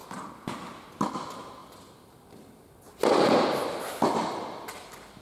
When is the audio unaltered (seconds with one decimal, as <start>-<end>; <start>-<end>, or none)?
0.0-5.2